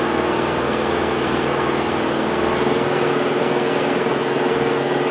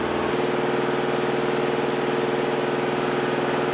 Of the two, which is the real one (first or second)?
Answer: second